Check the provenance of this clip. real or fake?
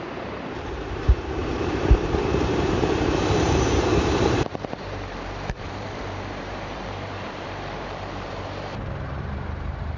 fake